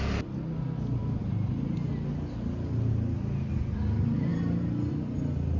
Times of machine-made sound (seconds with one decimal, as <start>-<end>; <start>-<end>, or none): none